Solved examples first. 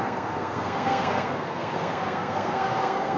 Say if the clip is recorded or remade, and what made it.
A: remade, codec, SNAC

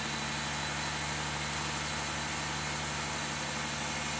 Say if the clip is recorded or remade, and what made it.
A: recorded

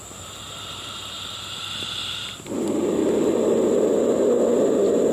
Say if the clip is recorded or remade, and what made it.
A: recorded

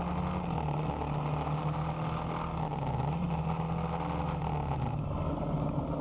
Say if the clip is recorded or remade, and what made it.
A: recorded